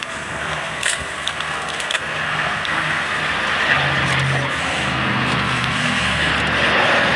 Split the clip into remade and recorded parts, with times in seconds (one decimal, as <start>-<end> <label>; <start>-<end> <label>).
0.0-3.2 remade; 3.2-4.5 recorded; 4.5-6.3 remade; 6.3-7.2 recorded